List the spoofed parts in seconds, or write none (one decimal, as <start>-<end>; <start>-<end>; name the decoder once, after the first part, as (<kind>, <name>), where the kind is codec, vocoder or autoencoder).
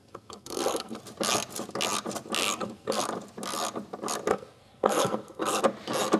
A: 0.0-1.0 (codec, SNAC); 2.4-3.0; 4.3-5.6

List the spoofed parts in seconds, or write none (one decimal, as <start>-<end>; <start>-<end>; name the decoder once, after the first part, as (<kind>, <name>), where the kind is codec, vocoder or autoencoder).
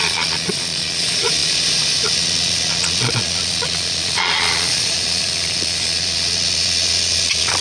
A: 0.0-7.6 (vocoder, Vocos)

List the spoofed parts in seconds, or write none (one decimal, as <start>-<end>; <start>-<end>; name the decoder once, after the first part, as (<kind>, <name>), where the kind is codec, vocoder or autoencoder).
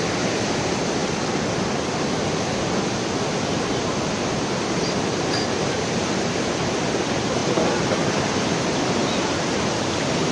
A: 0.0-1.0 (vocoder, BigVGAN v2); 3.6-7.4; 8.1-9.0; 9.8-10.3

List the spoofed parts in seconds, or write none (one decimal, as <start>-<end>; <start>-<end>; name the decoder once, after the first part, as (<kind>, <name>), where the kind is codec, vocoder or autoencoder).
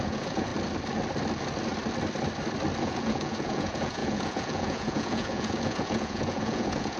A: 0.0-0.5 (vocoder, Vocos); 2.8-7.0